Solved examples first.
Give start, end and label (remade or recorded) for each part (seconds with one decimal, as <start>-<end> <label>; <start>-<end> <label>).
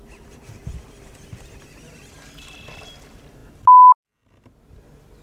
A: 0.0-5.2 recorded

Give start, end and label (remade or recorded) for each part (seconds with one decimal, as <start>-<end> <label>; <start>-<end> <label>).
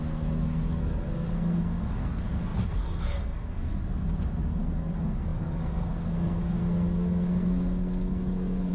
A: 0.0-8.7 remade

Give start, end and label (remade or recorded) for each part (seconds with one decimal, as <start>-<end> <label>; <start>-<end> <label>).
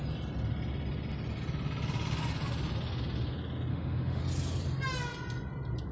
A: 0.0-3.7 recorded; 3.7-4.2 remade; 4.2-5.9 recorded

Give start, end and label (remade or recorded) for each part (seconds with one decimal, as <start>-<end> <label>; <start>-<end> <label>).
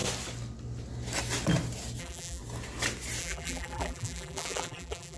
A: 0.0-2.0 recorded; 2.0-2.4 remade; 2.4-3.2 recorded; 3.2-5.2 remade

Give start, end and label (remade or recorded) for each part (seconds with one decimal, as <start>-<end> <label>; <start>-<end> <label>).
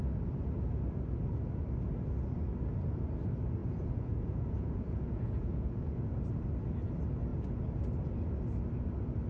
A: 0.0-3.6 recorded; 3.6-6.2 remade; 6.2-9.3 recorded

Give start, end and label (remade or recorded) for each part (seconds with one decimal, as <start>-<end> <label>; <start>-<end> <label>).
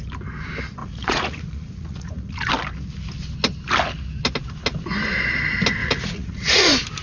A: 0.0-0.8 recorded; 0.8-2.5 remade; 2.5-5.8 recorded; 5.8-6.6 remade; 6.6-7.0 recorded